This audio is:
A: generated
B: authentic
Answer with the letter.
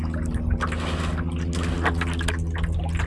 B